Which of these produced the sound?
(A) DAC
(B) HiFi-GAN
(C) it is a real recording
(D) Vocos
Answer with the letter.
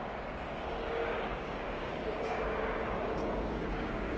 A